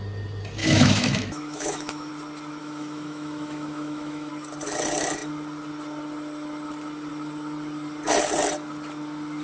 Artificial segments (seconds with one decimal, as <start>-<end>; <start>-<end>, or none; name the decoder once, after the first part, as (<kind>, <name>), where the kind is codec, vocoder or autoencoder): 0.6-2.1 (autoencoder, DAC-VAE); 2.6-4.3